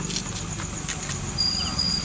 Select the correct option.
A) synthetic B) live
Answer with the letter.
B